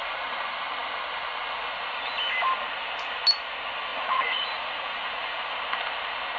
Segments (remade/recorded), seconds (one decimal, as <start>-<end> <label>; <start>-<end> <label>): 0.0-3.9 recorded; 3.9-5.6 remade; 5.6-6.4 recorded